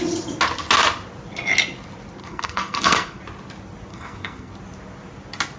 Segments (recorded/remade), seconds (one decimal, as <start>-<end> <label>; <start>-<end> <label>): 0.0-2.2 recorded; 2.2-3.2 remade; 3.2-3.9 recorded; 3.9-4.5 remade; 4.5-5.6 recorded